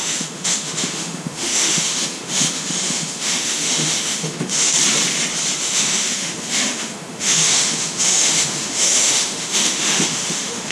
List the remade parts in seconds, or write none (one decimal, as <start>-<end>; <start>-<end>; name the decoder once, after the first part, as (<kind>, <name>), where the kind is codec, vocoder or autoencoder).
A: 0.0-4.7 (autoencoder, DAC-VAE); 5.6-10.7

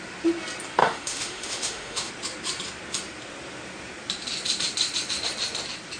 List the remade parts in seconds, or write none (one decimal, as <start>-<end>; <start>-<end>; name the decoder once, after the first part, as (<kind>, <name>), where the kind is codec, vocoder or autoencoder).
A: 0.8-2.1 (autoencoder, DAC-VAE)

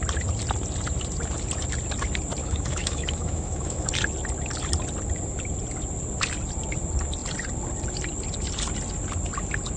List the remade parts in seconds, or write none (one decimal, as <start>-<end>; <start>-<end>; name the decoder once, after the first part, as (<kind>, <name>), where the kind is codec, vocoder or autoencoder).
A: 2.4-3.9 (autoencoder, DAC-VAE)

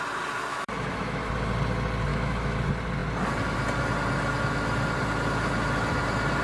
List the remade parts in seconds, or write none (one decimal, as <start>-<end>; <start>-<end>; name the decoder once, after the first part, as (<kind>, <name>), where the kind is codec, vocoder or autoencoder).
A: 0.5-1.3 (autoencoder, DAC-VAE); 2.1-2.6

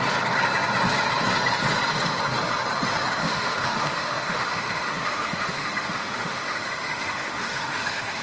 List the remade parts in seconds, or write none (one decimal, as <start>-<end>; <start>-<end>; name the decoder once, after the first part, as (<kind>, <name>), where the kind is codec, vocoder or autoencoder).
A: 3.2-8.2 (autoencoder, DAC-VAE)

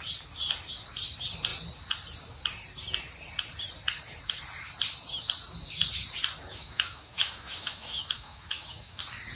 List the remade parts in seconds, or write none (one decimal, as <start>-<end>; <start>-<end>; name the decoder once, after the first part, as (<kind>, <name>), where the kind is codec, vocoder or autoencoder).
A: 6.5-9.0 (autoencoder, DAC-VAE)

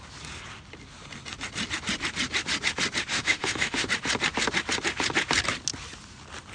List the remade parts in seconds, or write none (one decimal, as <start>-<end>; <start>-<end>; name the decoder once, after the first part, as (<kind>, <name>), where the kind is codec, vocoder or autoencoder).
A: 3.1-3.9 (autoencoder, DAC-VAE)

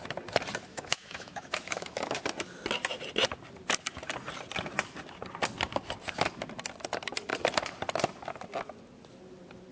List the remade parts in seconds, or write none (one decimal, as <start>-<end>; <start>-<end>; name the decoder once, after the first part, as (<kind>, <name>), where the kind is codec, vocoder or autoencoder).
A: 0.7-2.2 (autoencoder, DAC-VAE)